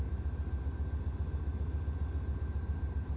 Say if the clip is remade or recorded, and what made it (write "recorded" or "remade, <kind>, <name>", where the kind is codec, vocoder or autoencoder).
recorded